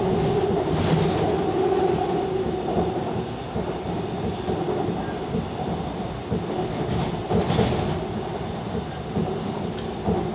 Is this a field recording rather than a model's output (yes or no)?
yes